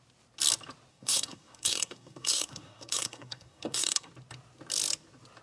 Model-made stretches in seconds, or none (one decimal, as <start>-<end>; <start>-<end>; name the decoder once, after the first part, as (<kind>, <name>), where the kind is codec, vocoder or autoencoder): 0.9-4.1 (codec, SNAC)